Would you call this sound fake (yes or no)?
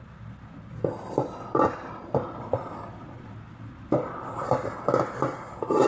no